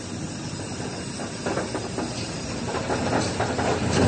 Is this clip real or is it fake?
real